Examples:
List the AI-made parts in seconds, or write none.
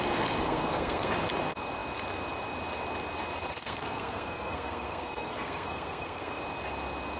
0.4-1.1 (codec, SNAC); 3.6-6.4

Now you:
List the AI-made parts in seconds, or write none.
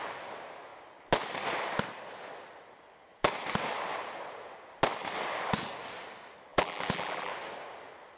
6.5-7.3 (vocoder, BigVGAN v2)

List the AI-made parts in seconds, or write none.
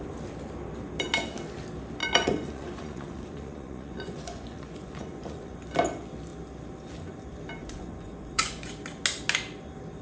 2.0-5.6 (vocoder, Vocos); 7.6-8.7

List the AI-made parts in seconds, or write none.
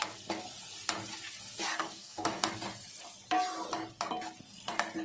1.8-2.5 (codec, DAC)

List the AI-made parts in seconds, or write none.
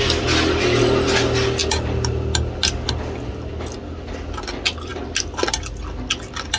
none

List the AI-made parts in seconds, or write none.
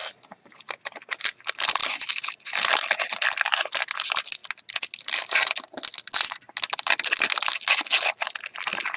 none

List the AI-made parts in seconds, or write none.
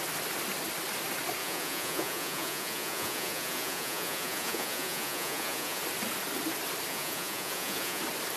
1.4-5.8 (vocoder, Vocos); 6.9-8.0